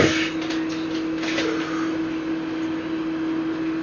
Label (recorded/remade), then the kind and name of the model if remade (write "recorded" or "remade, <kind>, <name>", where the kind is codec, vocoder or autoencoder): recorded